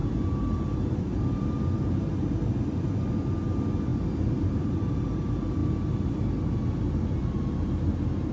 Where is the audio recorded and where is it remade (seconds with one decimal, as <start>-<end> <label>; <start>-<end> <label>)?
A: 0.0-2.0 remade; 2.0-3.9 recorded; 3.9-4.6 remade; 4.6-7.2 recorded; 7.2-7.9 remade; 7.9-8.3 recorded